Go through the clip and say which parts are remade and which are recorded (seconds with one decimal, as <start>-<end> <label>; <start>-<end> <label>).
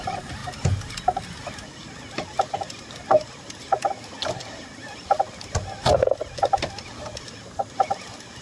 0.0-8.4 recorded